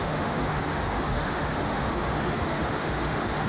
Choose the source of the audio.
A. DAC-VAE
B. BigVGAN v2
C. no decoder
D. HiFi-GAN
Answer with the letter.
A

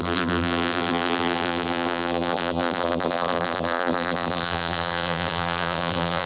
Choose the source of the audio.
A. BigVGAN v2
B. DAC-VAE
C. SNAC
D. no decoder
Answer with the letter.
A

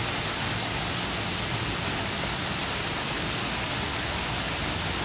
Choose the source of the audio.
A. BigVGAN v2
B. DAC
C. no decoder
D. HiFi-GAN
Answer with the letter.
C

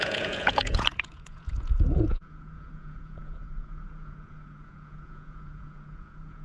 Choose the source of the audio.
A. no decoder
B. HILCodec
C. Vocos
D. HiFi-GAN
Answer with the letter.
C